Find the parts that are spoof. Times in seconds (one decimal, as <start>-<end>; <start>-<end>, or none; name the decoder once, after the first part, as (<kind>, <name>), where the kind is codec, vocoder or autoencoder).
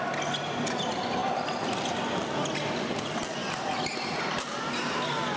3.4-4.6 (vocoder, BigVGAN v2)